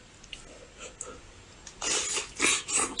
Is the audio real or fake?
real